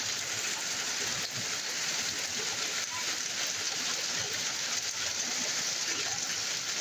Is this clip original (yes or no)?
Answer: yes